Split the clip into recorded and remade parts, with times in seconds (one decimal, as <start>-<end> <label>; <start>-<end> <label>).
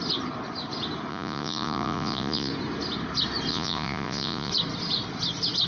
0.0-1.1 recorded; 1.1-2.5 remade; 2.5-3.5 recorded; 3.5-4.5 remade; 4.5-5.7 recorded